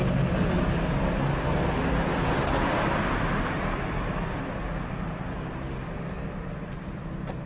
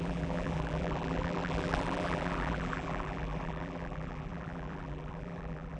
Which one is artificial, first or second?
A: second